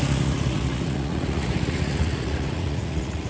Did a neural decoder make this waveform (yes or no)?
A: yes